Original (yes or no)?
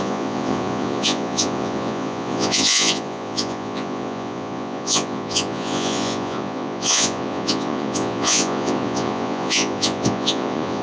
no